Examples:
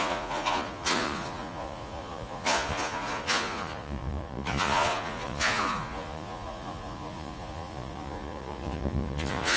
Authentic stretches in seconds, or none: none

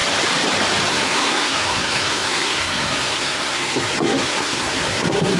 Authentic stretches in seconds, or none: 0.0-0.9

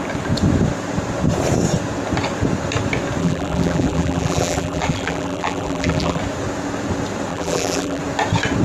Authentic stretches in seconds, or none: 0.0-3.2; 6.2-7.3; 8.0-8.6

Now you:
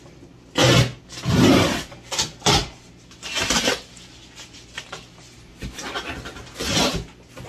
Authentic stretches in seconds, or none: 0.0-7.5

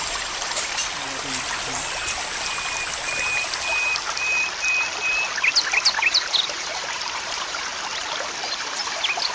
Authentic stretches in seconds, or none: 0.8-6.0; 7.7-8.5